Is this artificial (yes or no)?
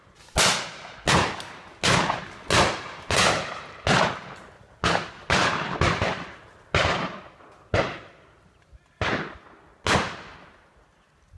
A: no